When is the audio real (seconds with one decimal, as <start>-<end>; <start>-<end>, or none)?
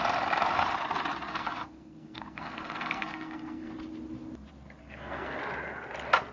0.0-1.3; 3.7-4.8; 5.4-6.3